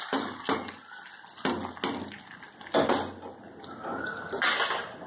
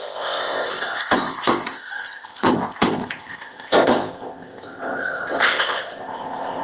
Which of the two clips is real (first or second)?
first